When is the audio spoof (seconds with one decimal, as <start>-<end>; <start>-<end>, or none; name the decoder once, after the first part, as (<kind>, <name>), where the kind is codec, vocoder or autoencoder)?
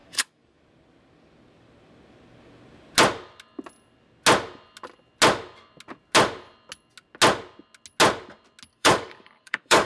0.0-0.6 (codec, DAC); 8.7-9.9